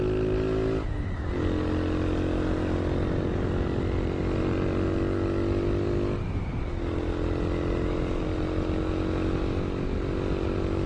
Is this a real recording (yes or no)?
yes